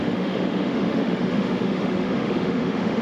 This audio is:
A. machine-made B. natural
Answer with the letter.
A